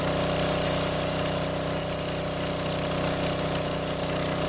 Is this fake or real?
real